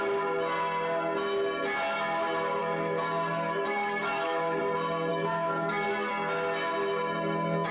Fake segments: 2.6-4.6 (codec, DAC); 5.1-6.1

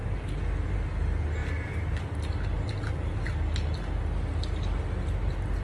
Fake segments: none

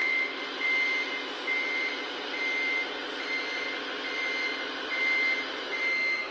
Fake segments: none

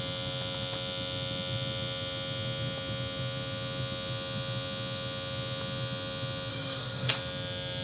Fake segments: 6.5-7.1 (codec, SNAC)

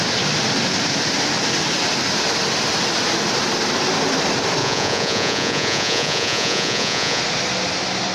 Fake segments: 4.6-7.2 (vocoder, Vocos)

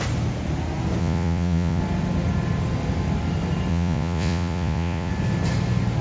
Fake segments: 1.0-1.8 (vocoder, Vocos); 3.7-5.1

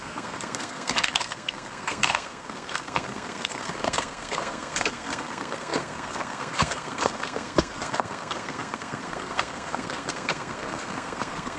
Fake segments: 0.0-11.6 (codec, SNAC)